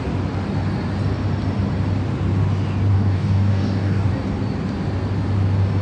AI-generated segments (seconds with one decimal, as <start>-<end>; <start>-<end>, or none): 2.9-4.1